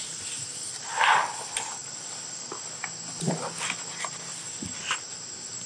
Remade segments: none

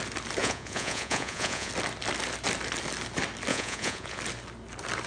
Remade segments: 0.4-1.7 (vocoder, Vocos); 3.5-4.2

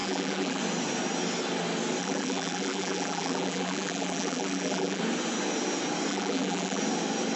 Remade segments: 0.0-0.6 (vocoder, BigVGAN v2); 2.0-5.0; 6.1-6.8

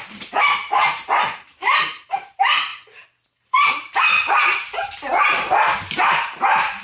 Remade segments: 0.0-0.6 (vocoder, BigVGAN v2); 1.4-2.7; 3.7-6.8

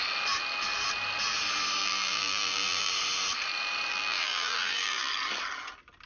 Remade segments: 1.8-2.9 (vocoder, BigVGAN v2); 3.9-5.1

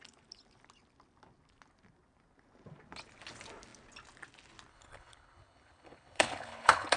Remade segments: 4.7-7.0 (codec, HILCodec)